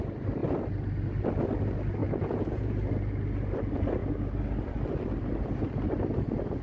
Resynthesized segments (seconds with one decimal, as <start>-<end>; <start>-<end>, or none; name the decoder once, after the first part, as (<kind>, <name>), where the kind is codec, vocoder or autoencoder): 2.0-2.9 (vocoder, Vocos)